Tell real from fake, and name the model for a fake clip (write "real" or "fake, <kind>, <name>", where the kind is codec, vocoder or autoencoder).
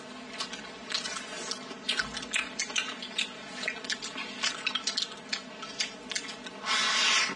real